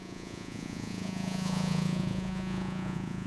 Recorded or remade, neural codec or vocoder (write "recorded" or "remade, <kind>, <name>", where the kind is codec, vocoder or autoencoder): remade, vocoder, Vocos